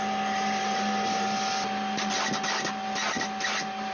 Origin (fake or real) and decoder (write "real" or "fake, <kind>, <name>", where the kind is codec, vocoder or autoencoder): real